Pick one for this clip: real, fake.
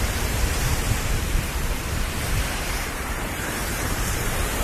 fake